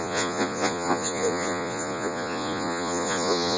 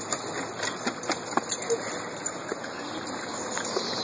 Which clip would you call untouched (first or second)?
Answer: second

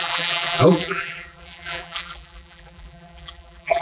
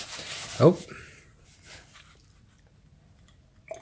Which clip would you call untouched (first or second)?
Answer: second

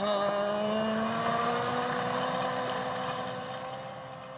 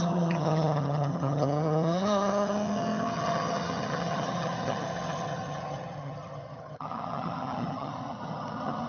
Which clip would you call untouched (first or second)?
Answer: first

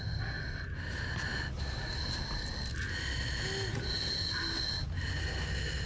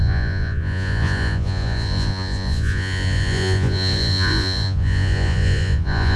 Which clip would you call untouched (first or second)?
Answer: first